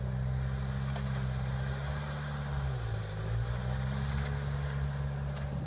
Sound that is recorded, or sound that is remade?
recorded